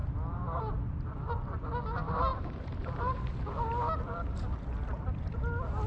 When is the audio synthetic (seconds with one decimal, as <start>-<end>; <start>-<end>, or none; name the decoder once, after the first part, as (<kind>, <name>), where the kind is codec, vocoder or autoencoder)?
2.3-2.8 (vocoder, BigVGAN v2)